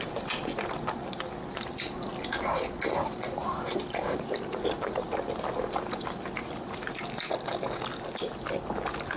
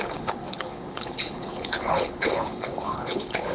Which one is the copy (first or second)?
second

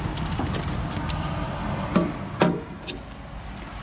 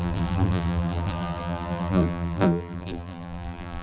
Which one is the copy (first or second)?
second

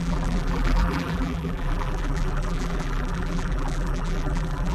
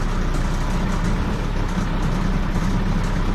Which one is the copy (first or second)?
first